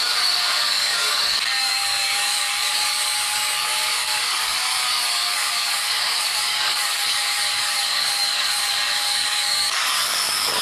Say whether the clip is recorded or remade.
remade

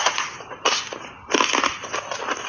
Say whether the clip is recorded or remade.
recorded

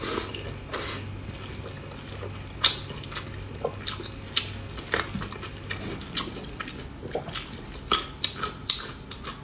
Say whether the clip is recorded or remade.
recorded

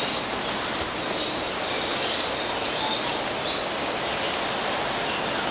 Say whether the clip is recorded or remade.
recorded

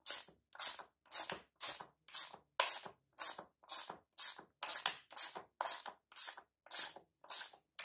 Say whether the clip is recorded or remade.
recorded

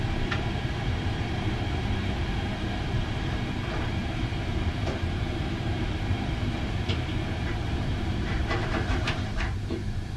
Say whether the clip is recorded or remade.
remade